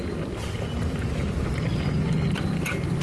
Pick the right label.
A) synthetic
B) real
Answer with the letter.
B